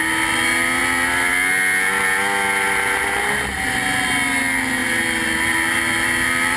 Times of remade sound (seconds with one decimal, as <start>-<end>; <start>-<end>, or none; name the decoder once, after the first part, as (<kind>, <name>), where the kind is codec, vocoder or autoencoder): none